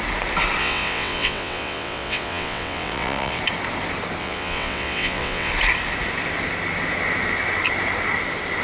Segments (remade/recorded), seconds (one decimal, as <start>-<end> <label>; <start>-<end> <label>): 0.0-0.6 recorded; 0.6-3.4 remade; 3.4-4.2 recorded; 4.2-5.5 remade; 5.5-8.6 recorded